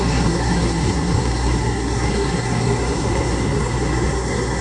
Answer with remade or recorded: remade